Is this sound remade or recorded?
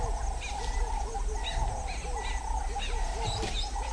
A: recorded